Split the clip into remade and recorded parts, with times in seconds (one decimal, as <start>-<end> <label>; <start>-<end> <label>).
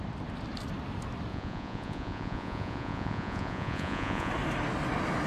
0.0-1.3 recorded; 1.3-4.3 remade; 4.3-5.3 recorded